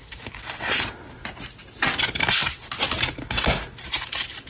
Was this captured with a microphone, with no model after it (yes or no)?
yes